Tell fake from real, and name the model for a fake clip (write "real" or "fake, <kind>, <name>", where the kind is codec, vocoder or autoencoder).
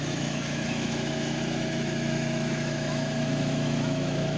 fake, autoencoder, DAC-VAE